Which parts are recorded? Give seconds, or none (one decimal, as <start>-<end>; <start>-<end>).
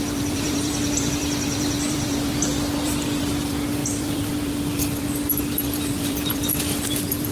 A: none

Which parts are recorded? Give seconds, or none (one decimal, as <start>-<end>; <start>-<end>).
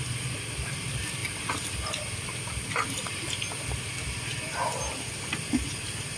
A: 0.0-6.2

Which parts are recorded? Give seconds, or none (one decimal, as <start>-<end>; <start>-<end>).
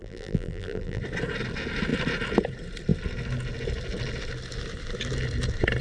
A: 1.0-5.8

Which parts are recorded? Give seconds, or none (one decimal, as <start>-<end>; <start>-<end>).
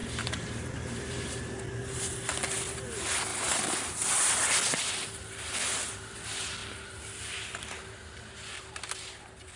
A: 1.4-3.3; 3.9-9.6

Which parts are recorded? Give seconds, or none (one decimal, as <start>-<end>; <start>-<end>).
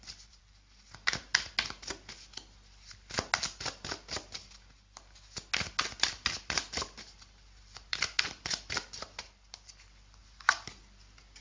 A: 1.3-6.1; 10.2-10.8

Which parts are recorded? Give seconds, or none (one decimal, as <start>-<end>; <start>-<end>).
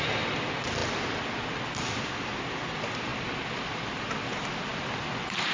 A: 0.0-3.1; 3.9-5.5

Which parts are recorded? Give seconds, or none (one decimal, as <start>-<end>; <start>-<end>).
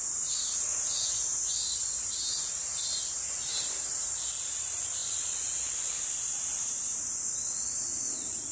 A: none